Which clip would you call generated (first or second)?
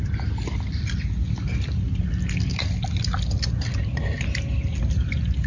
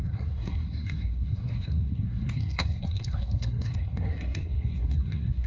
second